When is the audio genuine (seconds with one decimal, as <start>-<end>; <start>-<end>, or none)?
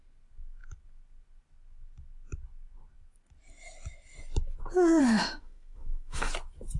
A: 0.0-5.0; 6.3-6.8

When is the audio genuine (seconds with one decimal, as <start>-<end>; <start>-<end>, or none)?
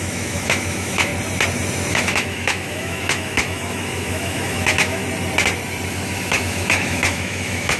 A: 1.1-1.9; 5.0-5.9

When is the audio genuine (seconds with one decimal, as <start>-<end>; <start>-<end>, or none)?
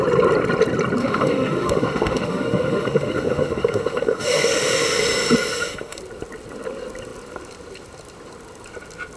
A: 0.0-1.0; 5.0-5.5; 6.0-9.2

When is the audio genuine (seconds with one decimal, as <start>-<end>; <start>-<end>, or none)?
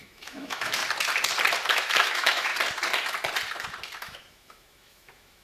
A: 0.8-1.7; 2.5-4.0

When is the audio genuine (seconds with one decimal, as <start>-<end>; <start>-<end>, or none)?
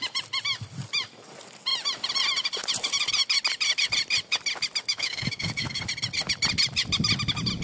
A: 0.0-4.9; 5.8-7.6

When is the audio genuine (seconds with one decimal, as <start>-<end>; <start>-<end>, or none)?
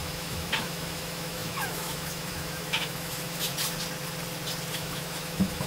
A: 3.5-4.7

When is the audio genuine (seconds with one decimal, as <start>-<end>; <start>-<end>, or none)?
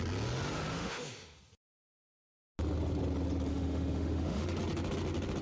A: 0.0-0.7; 1.4-3.5; 4.6-5.4